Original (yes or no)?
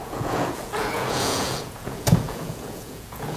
no